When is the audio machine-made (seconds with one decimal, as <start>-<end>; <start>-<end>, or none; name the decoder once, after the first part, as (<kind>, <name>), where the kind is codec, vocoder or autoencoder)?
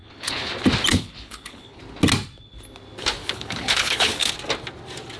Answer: 0.0-0.5 (codec, HILCodec); 0.9-1.8; 3.2-4.3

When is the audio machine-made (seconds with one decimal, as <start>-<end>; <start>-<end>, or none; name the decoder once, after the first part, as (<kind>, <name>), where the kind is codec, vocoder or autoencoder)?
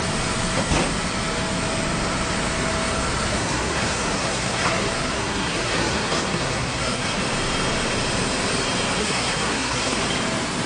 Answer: 3.3-7.2 (codec, SNAC); 9.0-10.0